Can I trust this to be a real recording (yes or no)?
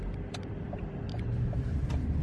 no